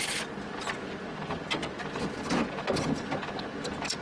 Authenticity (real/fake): real